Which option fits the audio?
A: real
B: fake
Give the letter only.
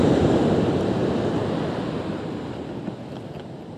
A